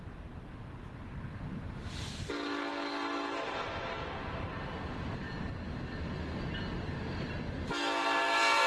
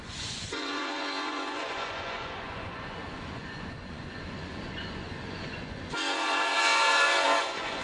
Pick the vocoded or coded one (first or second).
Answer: second